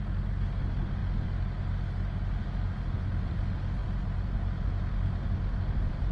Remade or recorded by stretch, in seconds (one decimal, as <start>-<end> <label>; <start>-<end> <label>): 0.0-6.1 recorded